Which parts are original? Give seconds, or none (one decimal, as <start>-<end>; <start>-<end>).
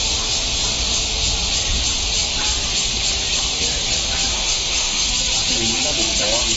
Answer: 0.0-4.3; 5.1-6.6